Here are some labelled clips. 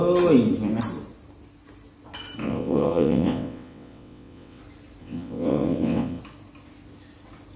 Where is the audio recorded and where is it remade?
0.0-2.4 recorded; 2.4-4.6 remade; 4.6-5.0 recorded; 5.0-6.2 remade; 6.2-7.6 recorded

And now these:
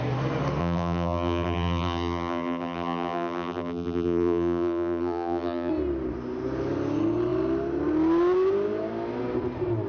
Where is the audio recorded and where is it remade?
0.0-0.6 recorded; 0.6-5.7 remade; 5.7-9.9 recorded

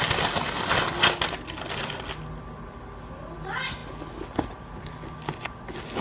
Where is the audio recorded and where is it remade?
0.0-6.0 recorded

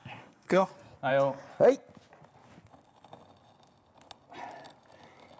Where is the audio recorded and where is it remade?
0.0-0.7 remade; 0.7-5.4 recorded